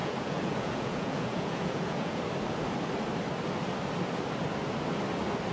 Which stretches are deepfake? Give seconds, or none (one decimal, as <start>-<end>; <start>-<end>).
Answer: 0.0-2.2